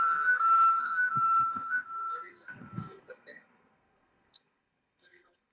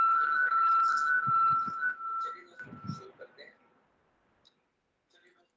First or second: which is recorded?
second